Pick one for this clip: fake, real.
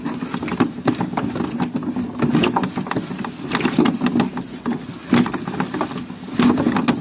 real